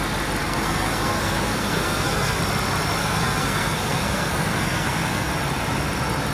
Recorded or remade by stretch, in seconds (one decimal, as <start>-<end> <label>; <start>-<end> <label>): 0.0-0.4 recorded; 0.4-2.4 remade; 2.4-3.0 recorded; 3.0-5.3 remade; 5.3-6.3 recorded